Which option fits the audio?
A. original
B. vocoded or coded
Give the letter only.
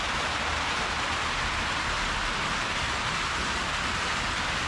A